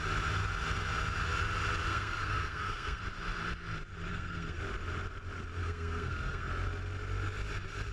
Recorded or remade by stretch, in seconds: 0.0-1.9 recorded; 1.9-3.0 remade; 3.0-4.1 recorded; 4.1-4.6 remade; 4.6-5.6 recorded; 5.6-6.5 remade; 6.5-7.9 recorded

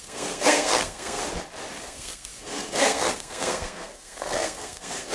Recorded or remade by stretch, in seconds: 0.0-1.2 remade; 1.2-1.8 recorded; 1.8-5.1 remade

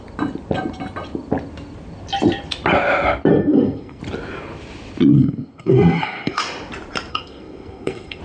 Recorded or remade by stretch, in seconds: 0.0-3.3 recorded; 3.3-4.0 remade; 4.0-5.1 recorded; 5.1-6.4 remade; 6.4-7.1 recorded; 7.1-8.2 remade

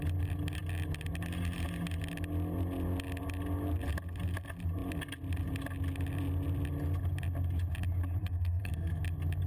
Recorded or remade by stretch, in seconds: 0.0-8.2 recorded; 8.2-9.0 remade; 9.0-9.5 recorded

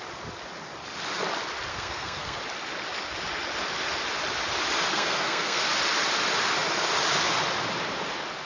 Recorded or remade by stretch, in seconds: 0.0-1.7 recorded; 1.7-2.4 remade; 2.4-4.9 recorded; 4.9-5.6 remade; 5.6-8.5 recorded

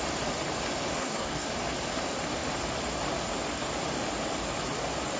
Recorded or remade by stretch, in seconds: 0.0-1.0 recorded; 1.0-1.5 remade; 1.5-5.2 recorded